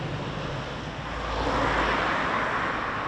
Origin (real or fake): real